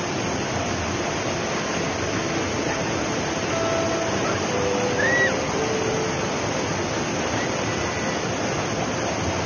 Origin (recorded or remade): recorded